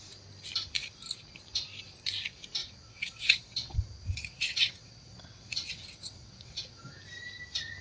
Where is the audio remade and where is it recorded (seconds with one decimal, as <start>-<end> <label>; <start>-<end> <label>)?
0.0-2.6 recorded; 2.6-6.8 remade; 6.8-7.8 recorded